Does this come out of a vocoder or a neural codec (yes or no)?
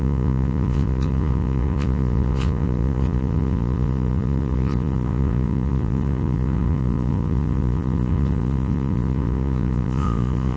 yes